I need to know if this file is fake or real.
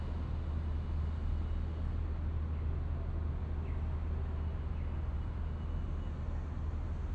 real